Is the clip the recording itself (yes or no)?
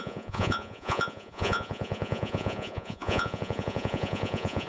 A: no